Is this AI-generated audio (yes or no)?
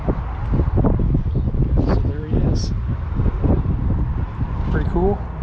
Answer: no